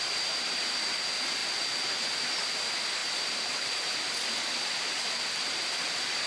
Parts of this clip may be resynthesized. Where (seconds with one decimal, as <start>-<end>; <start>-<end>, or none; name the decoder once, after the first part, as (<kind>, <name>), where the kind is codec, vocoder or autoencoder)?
none